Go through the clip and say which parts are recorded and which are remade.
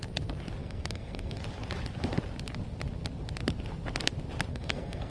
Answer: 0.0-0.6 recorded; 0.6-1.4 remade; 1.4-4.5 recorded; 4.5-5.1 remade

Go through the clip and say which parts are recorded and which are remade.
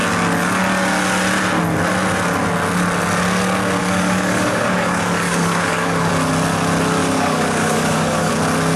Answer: 0.0-3.8 recorded; 3.8-6.1 remade; 6.1-7.0 recorded; 7.0-8.3 remade; 8.3-8.8 recorded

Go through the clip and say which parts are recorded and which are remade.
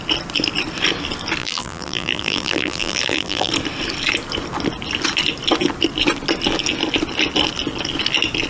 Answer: 0.0-1.4 recorded; 1.4-3.5 remade; 3.5-8.5 recorded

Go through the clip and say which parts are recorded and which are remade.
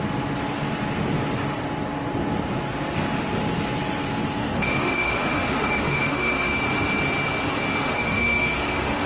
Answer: 0.0-4.4 recorded; 4.4-6.5 remade; 6.5-7.9 recorded; 7.9-9.1 remade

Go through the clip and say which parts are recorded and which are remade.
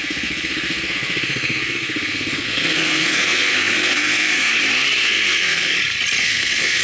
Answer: 0.0-4.5 remade; 4.5-5.0 recorded; 5.0-5.7 remade; 5.7-6.2 recorded; 6.2-6.8 remade